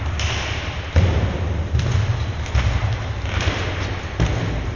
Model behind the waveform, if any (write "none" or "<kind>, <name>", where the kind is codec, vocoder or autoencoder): none